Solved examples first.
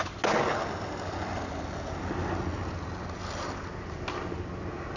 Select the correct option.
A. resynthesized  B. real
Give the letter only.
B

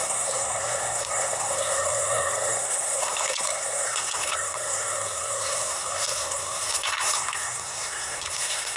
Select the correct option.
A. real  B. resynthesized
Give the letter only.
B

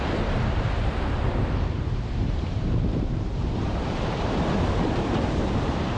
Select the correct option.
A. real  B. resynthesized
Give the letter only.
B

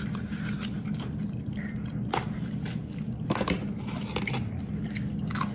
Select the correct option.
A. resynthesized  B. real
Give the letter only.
B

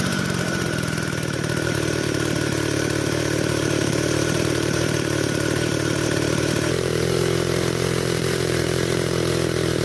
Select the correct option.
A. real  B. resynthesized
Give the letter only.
B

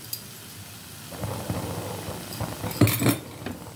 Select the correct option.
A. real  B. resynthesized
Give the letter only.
A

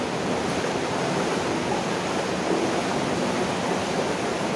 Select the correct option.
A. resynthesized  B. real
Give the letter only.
B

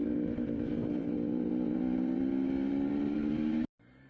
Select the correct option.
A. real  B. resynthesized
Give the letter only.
A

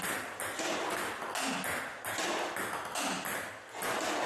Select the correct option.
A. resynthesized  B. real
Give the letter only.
B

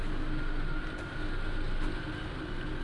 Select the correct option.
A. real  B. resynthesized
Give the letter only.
A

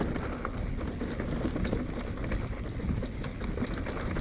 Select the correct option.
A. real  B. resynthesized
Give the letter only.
A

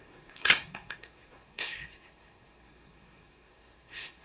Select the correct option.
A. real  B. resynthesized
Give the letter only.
B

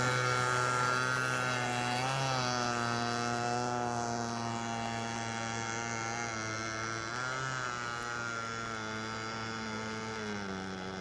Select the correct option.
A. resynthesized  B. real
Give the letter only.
B